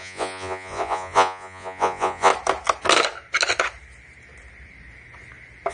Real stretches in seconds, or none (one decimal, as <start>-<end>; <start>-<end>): 2.3-5.7